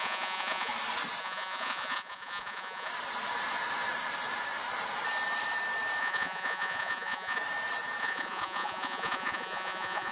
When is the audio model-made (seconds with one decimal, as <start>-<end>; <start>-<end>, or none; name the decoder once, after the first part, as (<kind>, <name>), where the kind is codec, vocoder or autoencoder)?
0.0-0.7 (vocoder, Vocos); 1.2-2.9; 6.0-7.4; 8.0-10.1